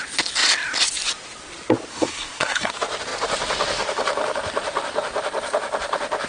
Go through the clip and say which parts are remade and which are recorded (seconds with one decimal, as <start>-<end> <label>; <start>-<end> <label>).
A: 0.0-1.9 recorded; 1.9-2.7 remade; 2.7-6.3 recorded